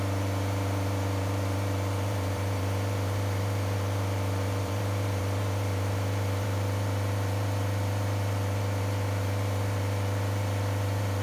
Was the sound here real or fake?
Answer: fake